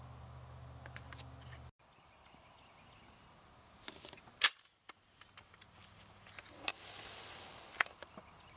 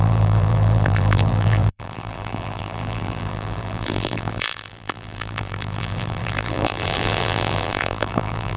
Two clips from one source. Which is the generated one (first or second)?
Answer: second